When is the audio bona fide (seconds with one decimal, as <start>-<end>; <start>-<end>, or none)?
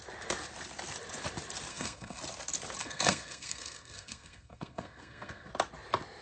0.0-1.7; 2.2-2.8; 5.5-6.2